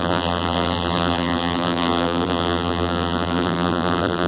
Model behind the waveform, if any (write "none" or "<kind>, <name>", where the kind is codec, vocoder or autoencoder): vocoder, BigVGAN v2